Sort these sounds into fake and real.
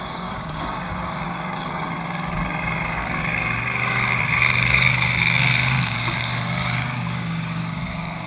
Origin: fake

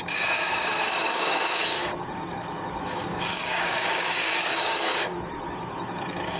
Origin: fake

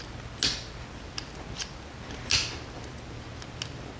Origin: real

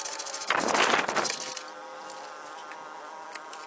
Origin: real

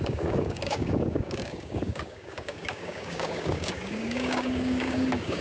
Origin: fake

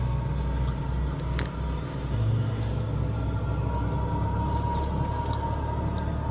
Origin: real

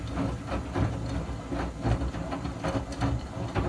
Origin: real